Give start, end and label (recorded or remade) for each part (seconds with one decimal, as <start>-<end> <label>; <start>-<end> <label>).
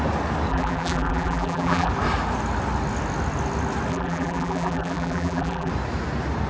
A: 0.0-0.5 recorded; 0.5-1.9 remade; 1.9-3.9 recorded; 3.9-5.7 remade; 5.7-6.5 recorded